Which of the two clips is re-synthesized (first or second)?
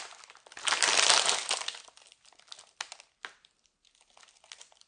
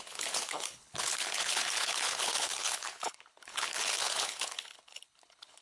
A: second